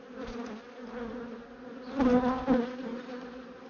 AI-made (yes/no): no